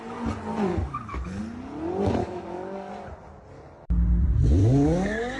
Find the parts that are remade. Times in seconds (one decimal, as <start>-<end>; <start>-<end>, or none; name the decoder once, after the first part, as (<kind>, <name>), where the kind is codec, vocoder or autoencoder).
0.7-1.4 (codec, DAC); 2.2-2.9; 4.6-5.4